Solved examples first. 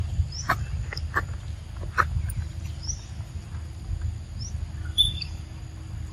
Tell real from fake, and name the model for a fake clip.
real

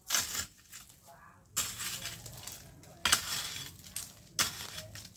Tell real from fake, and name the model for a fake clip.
real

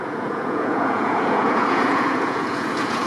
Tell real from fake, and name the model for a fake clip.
fake, vocoder, Vocos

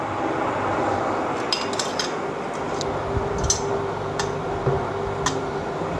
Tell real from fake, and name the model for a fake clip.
real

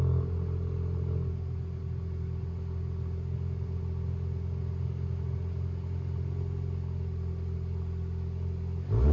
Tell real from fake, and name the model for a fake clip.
real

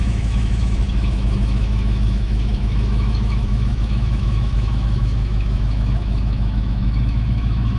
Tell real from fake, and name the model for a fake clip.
fake, autoencoder, DAC-VAE